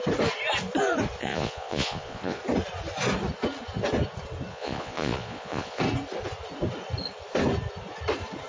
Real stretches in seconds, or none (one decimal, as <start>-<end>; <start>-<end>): 0.0-1.2; 2.4-4.5; 5.8-8.5